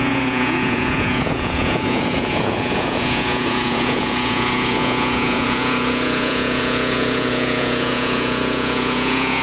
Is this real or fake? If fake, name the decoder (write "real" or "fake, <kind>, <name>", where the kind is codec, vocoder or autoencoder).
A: fake, vocoder, Vocos